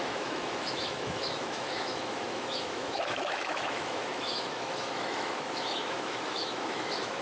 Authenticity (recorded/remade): remade